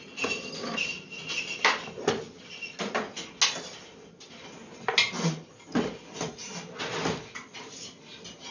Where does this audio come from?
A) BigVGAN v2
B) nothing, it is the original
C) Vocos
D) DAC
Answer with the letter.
B